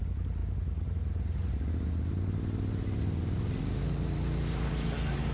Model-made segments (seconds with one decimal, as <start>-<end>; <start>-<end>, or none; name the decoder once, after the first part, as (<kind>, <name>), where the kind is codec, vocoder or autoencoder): none